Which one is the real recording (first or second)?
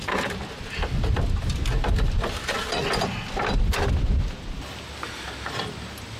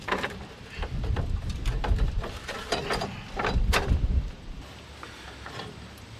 first